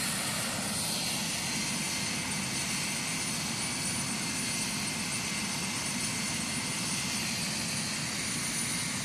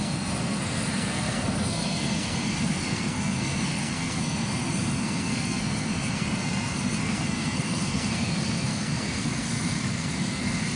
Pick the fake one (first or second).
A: second